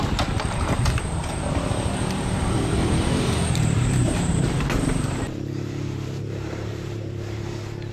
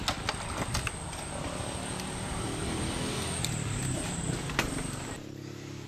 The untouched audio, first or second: second